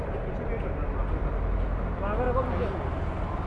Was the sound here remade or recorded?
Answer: recorded